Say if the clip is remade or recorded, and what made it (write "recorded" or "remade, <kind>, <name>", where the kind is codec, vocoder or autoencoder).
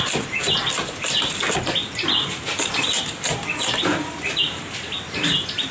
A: recorded